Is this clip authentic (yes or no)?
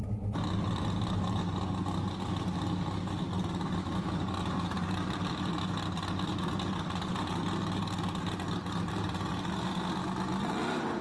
yes